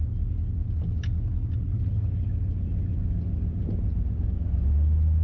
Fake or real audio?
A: real